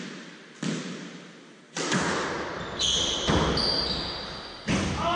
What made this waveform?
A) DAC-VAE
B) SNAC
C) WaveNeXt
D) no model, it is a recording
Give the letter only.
D